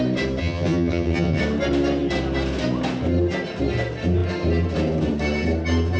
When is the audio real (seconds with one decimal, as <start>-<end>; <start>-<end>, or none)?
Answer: 0.0-0.4; 1.4-6.0